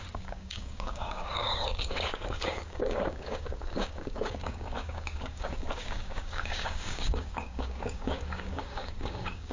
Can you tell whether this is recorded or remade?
remade